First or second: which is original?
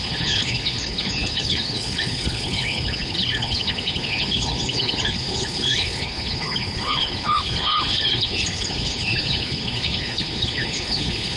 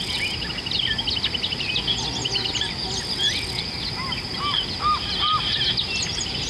second